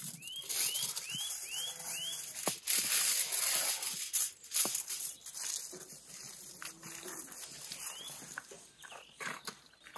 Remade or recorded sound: recorded